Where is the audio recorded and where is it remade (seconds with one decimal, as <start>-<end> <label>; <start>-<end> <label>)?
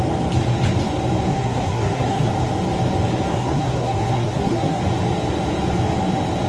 0.0-1.3 recorded; 1.3-2.3 remade; 2.3-3.3 recorded; 3.3-4.8 remade; 4.8-6.5 recorded